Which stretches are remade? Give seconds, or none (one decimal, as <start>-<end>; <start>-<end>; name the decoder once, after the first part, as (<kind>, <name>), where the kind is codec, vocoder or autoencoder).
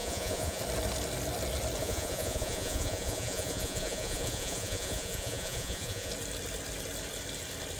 0.0-0.6 (vocoder, Vocos); 1.8-6.1